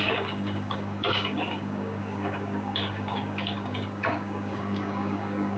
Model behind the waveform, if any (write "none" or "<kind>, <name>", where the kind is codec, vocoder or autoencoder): codec, DAC